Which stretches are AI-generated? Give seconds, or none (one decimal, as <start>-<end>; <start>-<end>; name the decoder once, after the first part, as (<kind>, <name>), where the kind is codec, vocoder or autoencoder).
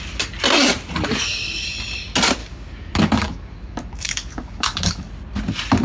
2.4-5.1 (codec, DAC)